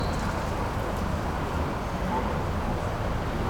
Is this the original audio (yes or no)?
yes